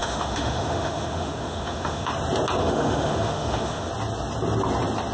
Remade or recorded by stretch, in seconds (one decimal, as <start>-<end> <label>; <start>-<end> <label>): 0.0-2.1 remade; 2.1-2.6 recorded; 2.6-3.9 remade; 3.9-5.1 recorded